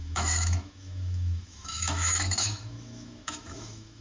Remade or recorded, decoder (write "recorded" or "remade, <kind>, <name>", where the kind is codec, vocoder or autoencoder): remade, autoencoder, DAC-VAE